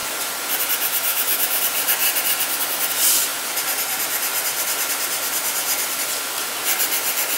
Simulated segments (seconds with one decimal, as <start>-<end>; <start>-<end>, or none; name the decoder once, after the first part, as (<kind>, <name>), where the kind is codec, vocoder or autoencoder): 1.1-1.6 (autoencoder, DAC-VAE)